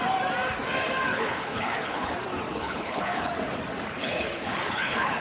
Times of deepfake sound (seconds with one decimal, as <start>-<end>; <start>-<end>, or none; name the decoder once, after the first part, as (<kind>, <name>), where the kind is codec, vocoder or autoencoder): 1.1-2.1 (codec, HILCodec); 2.5-3.3; 4.0-5.2